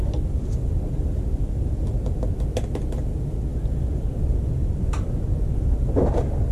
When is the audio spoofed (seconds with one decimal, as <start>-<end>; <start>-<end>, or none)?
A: none